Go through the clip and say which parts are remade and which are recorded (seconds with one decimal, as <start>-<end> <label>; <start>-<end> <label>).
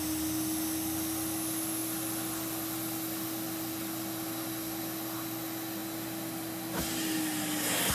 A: 0.0-7.9 recorded